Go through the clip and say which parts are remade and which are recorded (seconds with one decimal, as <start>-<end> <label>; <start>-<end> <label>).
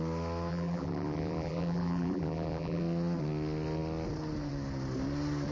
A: 0.0-0.5 recorded; 0.5-2.8 remade; 2.8-5.5 recorded